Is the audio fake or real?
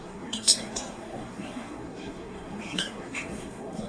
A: fake